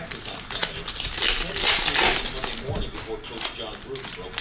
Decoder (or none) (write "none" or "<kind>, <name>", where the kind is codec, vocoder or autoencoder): none